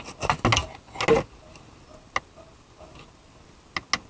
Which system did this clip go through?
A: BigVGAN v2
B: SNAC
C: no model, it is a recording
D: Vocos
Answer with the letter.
C